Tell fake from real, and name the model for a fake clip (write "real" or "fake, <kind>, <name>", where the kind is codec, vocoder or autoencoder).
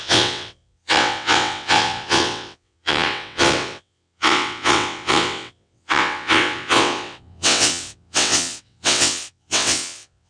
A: fake, vocoder, WaveNeXt